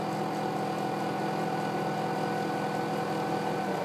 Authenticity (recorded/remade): recorded